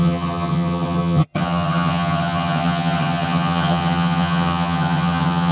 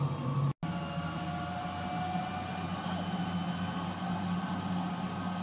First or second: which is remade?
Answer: first